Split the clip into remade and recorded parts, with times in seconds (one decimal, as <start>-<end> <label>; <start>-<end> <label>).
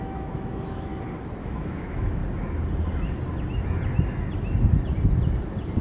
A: 0.0-0.9 remade; 0.9-1.4 recorded; 1.4-2.2 remade; 2.2-5.8 recorded